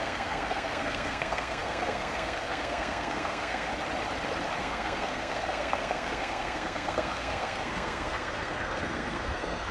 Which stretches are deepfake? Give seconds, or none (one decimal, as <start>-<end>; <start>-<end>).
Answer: 0.0-3.7; 4.6-9.7